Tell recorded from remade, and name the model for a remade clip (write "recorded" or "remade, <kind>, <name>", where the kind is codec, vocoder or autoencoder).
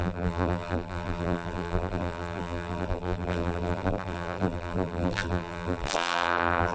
remade, vocoder, BigVGAN v2